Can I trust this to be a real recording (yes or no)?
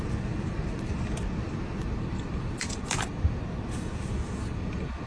no